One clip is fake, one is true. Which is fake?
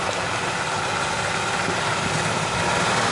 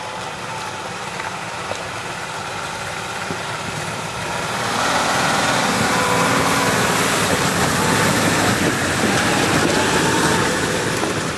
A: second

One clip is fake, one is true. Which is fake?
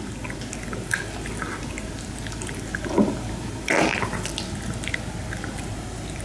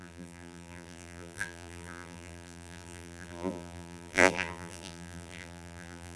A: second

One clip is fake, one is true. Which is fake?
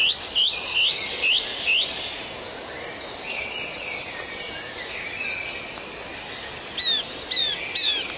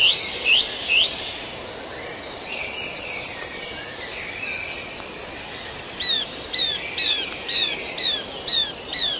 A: second